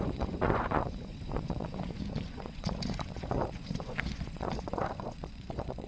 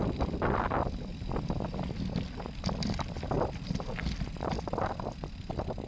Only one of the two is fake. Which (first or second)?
first